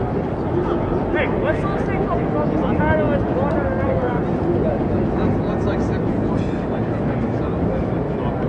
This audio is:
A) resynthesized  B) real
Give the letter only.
B